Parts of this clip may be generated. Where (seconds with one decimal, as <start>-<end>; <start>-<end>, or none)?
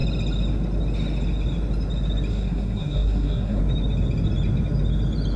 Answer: 2.3-3.6